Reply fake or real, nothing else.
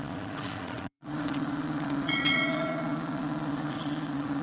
fake